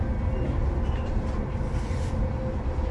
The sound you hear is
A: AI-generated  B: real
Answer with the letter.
B